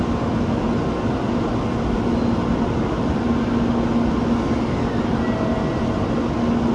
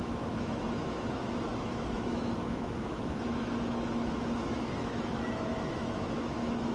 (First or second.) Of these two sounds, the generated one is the second